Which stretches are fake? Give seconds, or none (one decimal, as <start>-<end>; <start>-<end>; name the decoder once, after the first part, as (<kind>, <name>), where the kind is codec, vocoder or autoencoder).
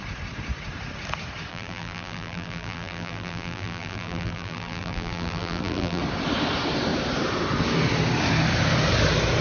1.5-6.0 (vocoder, BigVGAN v2)